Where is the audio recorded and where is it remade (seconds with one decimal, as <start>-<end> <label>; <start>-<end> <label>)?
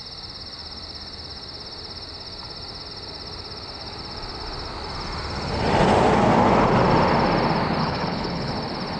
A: 0.0-7.8 recorded; 7.8-8.5 remade; 8.5-9.0 recorded